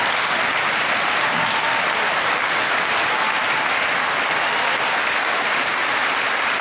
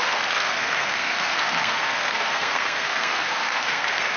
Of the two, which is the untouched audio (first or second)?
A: first